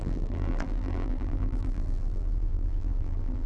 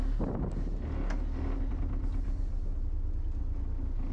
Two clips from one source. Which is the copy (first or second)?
first